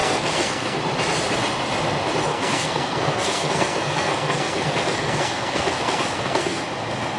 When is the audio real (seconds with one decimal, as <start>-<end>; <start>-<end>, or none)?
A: 0.8-2.3; 6.6-7.2